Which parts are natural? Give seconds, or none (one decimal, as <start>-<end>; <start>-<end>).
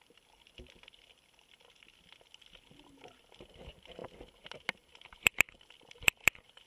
0.0-6.7